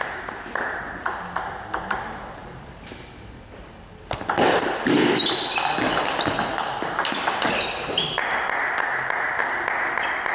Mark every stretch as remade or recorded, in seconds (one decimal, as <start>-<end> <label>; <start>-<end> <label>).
0.0-10.3 recorded